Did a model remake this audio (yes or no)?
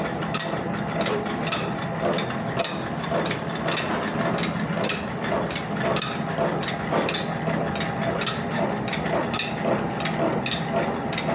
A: no